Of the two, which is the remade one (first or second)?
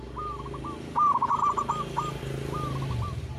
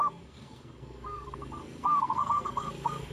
second